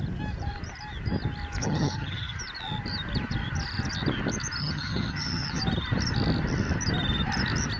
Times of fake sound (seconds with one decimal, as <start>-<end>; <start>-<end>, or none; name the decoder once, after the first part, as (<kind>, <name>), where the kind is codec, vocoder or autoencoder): 1.6-2.4 (vocoder, HiFi-GAN); 4.6-5.6